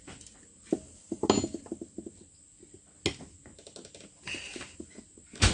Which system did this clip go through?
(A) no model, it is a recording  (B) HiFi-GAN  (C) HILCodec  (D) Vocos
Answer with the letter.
A